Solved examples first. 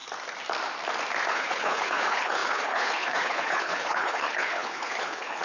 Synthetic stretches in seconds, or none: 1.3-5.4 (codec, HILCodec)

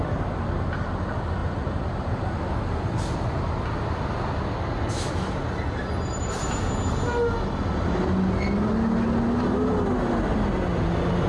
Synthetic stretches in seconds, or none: none

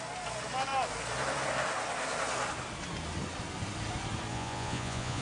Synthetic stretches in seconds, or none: 4.3-5.2 (vocoder, Vocos)

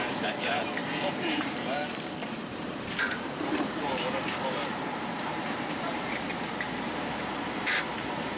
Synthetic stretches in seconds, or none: 0.0-0.8 (vocoder, BigVGAN v2); 1.4-1.8; 2.5-8.4

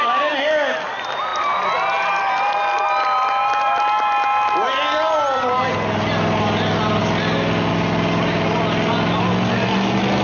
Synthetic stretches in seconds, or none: none